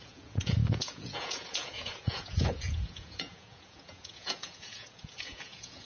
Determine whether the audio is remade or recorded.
remade